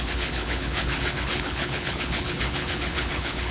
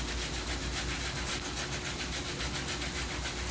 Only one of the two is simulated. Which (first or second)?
first